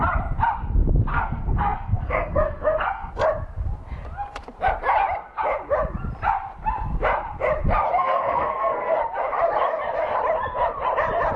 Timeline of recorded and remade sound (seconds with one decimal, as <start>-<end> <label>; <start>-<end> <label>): 0.0-1.1 recorded; 1.1-3.1 remade; 3.1-8.0 recorded; 8.0-9.0 remade; 9.0-11.4 recorded